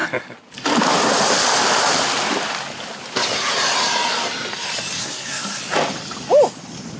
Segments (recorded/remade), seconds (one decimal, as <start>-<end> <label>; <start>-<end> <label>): 0.0-5.0 recorded; 5.0-5.6 remade; 5.6-7.0 recorded